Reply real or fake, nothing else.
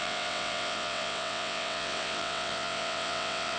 fake